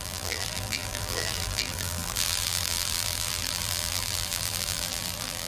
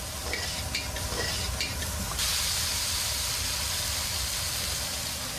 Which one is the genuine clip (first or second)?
second